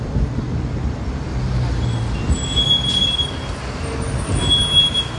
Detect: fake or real real